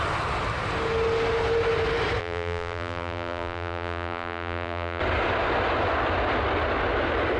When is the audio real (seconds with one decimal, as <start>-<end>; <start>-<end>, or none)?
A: 0.0-2.2; 5.0-7.4